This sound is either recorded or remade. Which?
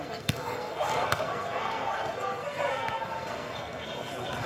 remade